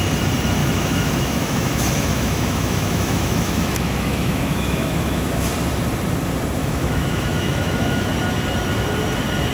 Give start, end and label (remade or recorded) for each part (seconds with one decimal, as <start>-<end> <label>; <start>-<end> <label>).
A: 0.0-0.6 recorded; 0.6-5.5 remade; 5.5-6.6 recorded; 6.6-8.1 remade; 8.1-9.5 recorded